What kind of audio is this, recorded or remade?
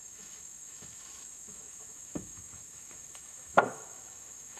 remade